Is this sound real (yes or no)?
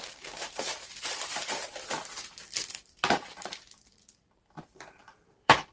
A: no